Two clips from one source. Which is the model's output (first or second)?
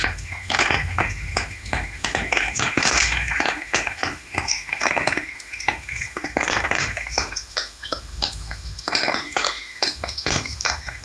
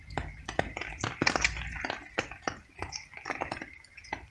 first